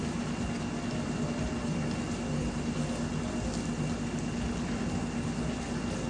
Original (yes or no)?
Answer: yes